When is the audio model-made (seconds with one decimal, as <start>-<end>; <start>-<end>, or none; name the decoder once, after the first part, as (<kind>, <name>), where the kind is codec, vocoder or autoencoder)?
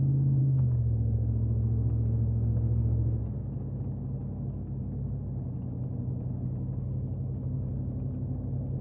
0.4-3.2 (codec, SNAC)